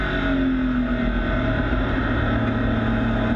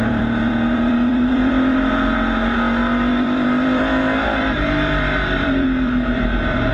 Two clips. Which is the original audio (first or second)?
first